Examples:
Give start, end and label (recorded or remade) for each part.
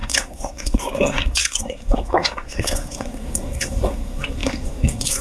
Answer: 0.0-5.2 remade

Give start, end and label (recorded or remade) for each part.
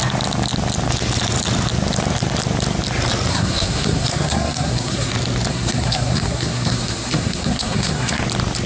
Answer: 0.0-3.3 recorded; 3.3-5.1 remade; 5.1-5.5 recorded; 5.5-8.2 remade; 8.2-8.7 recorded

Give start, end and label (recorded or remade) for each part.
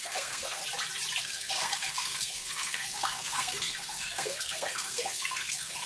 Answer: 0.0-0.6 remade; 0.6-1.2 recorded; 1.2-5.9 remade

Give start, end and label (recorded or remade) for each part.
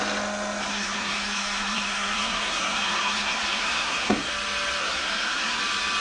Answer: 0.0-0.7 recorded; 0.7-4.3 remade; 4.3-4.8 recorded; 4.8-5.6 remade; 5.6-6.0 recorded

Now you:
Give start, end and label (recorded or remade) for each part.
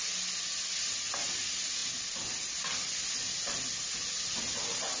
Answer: 0.0-5.0 recorded